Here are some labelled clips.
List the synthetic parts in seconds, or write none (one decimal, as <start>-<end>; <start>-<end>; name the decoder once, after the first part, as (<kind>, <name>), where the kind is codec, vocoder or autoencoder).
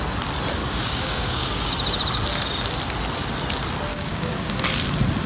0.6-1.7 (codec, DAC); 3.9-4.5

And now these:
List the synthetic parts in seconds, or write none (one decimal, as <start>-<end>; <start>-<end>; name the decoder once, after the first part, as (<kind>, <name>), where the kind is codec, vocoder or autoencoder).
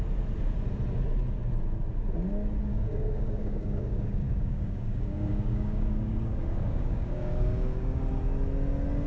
2.7-8.0 (codec, DAC)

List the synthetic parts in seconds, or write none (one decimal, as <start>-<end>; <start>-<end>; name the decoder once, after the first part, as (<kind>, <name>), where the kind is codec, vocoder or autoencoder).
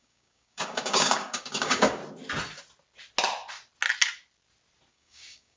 0.0-2.0 (codec, DAC); 4.9-5.6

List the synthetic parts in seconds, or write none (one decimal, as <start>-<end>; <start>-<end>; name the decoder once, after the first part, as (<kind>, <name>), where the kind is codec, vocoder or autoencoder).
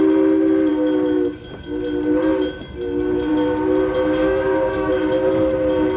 4.2-4.9 (codec, DAC)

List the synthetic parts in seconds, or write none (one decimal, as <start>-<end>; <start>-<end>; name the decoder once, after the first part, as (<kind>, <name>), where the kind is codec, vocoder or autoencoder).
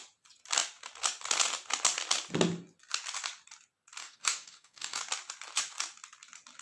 4.0-5.0 (codec, DAC)